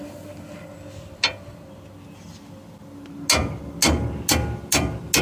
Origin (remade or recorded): recorded